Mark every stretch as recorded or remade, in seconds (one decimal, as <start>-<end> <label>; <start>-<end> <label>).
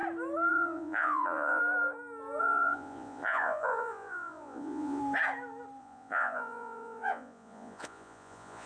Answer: 0.0-0.5 recorded; 0.5-1.6 remade; 1.6-2.4 recorded; 2.4-5.0 remade; 5.0-5.8 recorded; 5.8-8.7 remade